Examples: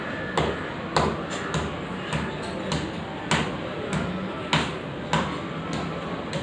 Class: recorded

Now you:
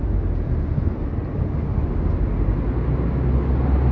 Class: recorded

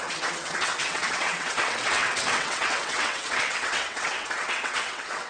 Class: remade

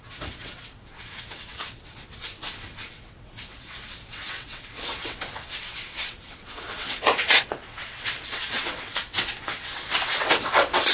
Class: remade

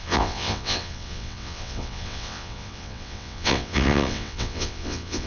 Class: remade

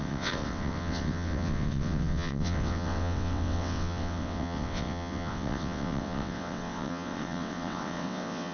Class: remade